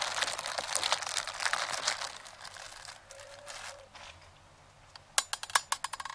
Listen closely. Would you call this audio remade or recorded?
recorded